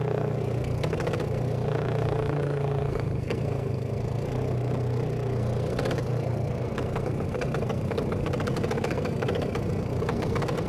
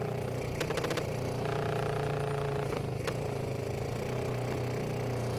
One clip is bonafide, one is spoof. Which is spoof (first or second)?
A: first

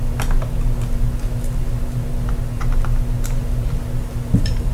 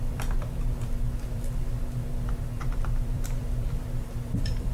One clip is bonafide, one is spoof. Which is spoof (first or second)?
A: second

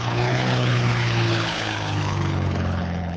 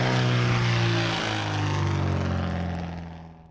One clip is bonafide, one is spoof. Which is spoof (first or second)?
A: first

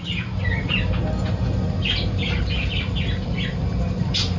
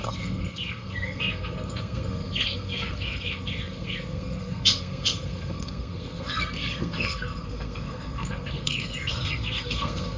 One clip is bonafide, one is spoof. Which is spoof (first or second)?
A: second